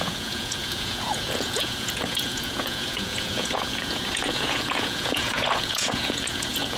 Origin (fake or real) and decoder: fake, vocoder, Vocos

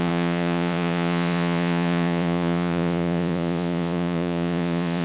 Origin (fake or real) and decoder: fake, vocoder, Vocos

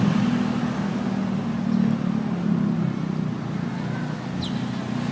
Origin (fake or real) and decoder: real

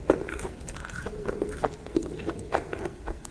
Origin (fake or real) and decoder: fake, codec, SNAC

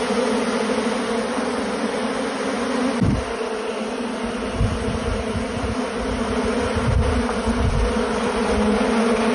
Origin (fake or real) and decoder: real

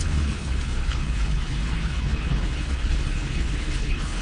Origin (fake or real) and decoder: fake, codec, HILCodec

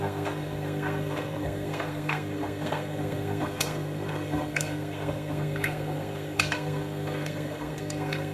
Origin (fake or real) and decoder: fake, codec, SNAC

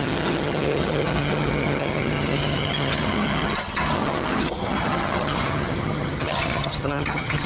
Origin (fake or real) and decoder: fake, vocoder, HiFi-GAN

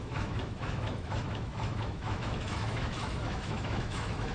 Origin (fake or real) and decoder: fake, autoencoder, DAC-VAE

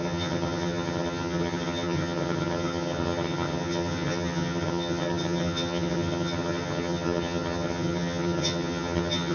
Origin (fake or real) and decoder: fake, vocoder, HiFi-GAN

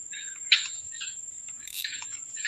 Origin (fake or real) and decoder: fake, autoencoder, DAC-VAE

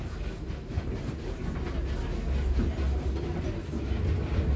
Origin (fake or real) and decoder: real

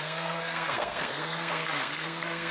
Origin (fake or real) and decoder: fake, codec, SNAC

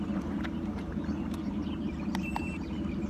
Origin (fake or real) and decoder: fake, vocoder, BigVGAN v2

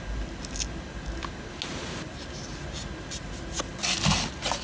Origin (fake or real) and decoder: real